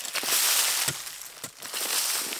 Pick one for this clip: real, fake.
real